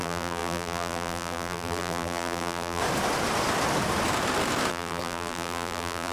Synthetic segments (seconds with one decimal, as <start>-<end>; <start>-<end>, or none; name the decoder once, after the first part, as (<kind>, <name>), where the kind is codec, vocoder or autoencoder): 0.0-2.8 (vocoder, BigVGAN v2); 4.7-6.1